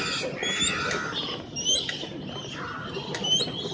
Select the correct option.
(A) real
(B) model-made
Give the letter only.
A